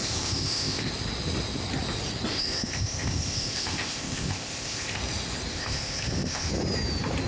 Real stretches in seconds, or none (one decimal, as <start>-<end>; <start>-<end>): 0.9-2.3; 5.0-5.5; 6.5-7.3